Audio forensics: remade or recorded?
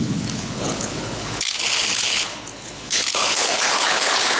remade